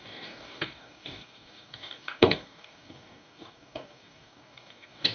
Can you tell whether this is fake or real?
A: fake